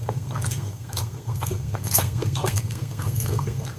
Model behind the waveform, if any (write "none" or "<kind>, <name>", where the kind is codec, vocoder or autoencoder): codec, SNAC